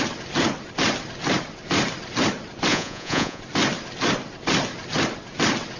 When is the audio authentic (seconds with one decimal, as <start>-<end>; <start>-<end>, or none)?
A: 0.0-2.7; 3.4-5.8